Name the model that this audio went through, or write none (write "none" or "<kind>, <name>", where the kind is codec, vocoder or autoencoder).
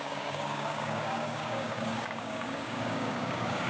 codec, DAC